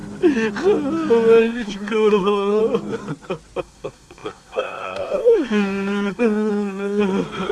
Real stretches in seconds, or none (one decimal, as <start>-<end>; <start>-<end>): 0.0-1.4; 2.6-3.6; 7.0-7.5